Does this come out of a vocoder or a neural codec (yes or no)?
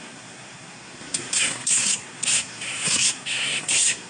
yes